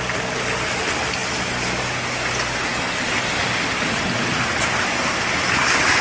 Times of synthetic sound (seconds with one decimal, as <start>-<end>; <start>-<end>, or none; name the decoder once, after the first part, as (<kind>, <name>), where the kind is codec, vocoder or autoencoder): none